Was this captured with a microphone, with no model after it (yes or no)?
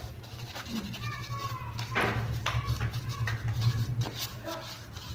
yes